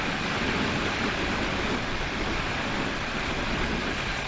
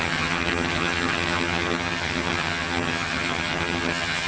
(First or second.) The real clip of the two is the first